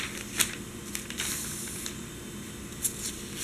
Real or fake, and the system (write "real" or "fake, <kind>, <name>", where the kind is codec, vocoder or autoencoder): real